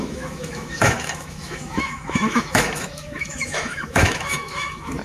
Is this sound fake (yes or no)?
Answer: yes